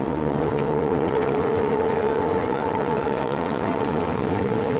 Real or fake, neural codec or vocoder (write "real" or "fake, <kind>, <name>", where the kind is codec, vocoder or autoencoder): fake, vocoder, WaveNeXt